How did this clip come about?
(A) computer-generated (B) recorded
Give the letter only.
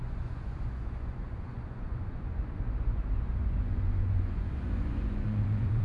A